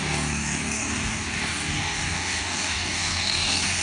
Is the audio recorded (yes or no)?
no